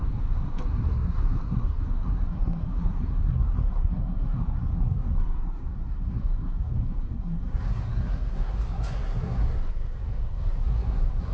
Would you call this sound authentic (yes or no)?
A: no